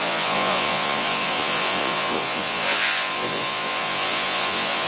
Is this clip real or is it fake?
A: fake